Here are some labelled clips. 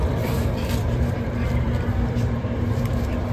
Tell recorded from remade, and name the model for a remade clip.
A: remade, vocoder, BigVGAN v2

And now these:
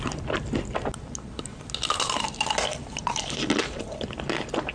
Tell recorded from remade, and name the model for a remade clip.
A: recorded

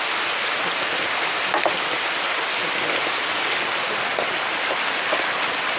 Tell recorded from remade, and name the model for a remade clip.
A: recorded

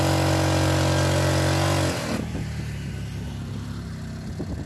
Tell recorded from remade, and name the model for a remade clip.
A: recorded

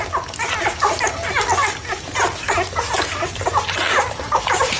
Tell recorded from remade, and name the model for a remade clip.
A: recorded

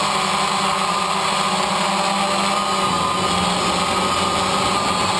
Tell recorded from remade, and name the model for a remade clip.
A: recorded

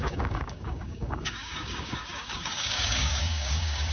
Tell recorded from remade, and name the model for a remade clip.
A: remade, codec, DAC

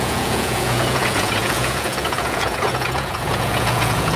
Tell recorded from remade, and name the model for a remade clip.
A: remade, vocoder, Vocos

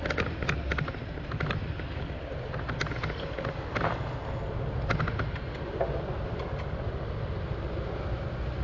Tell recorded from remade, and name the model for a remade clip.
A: recorded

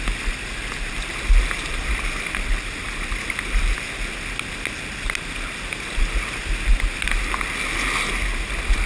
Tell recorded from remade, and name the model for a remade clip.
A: recorded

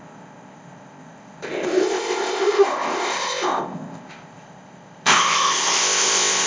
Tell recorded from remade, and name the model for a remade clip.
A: remade, codec, ZipCodec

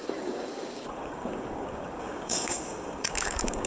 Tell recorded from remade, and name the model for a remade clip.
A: remade, codec, DAC